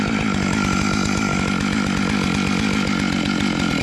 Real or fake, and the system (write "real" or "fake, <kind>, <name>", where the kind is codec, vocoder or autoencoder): real